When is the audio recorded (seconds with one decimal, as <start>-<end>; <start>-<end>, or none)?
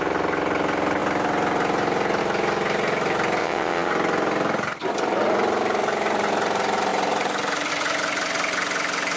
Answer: 0.0-3.4; 3.9-9.2